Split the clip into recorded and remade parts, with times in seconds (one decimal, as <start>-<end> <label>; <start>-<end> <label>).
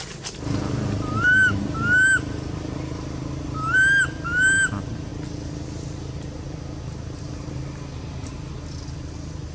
0.0-9.5 recorded